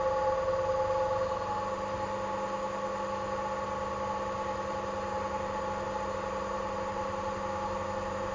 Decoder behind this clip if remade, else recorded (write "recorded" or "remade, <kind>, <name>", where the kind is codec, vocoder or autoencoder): recorded